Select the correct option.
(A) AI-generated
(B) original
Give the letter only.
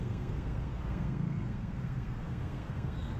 A